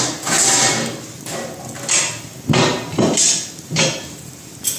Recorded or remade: recorded